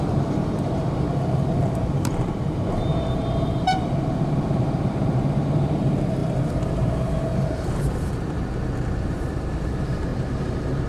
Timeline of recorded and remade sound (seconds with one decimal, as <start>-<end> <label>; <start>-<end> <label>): 0.0-10.9 remade